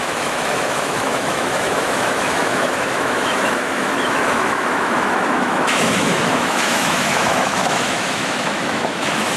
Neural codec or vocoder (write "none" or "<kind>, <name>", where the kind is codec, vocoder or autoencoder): autoencoder, DAC-VAE